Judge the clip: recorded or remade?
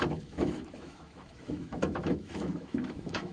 remade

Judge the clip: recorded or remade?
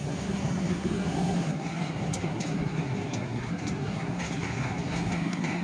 remade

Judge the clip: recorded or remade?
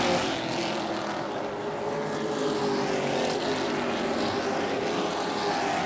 recorded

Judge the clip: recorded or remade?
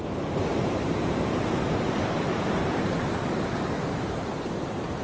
remade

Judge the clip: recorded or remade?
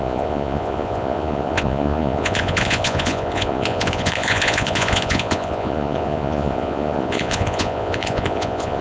remade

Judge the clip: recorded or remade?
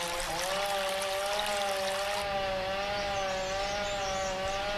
recorded